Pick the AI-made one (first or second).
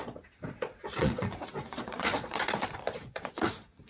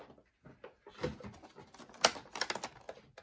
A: first